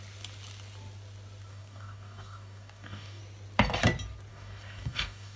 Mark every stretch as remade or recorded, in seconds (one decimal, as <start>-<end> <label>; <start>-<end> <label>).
0.0-1.5 recorded; 1.5-3.2 remade; 3.2-4.3 recorded; 4.3-5.4 remade